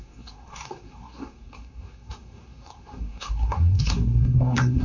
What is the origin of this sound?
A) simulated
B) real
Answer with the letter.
A